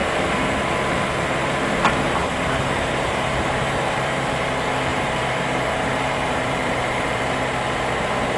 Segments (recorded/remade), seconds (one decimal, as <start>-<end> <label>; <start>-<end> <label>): 0.0-2.2 recorded; 2.2-4.4 remade; 4.4-4.9 recorded; 4.9-7.2 remade; 7.2-8.4 recorded